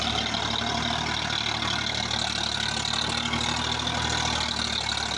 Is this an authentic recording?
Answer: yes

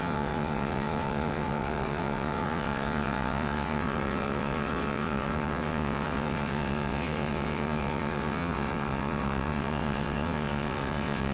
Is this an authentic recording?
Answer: no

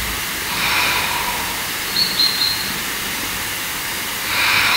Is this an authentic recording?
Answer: no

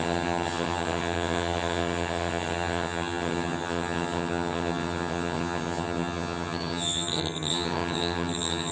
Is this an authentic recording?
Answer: no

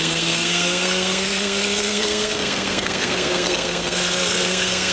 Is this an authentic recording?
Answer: no